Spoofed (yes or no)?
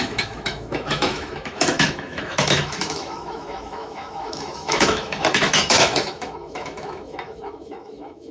yes